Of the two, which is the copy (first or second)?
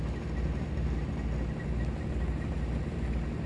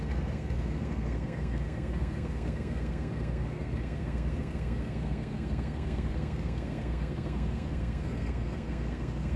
second